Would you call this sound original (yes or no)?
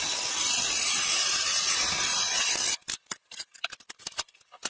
yes